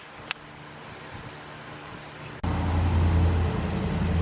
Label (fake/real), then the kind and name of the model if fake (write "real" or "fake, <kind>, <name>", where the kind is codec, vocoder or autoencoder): real